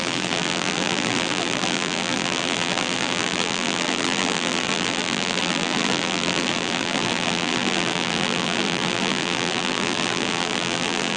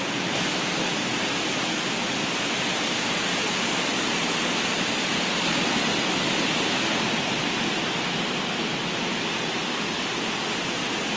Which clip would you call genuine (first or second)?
second